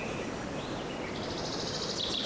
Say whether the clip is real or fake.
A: real